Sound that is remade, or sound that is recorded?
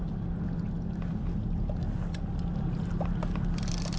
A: recorded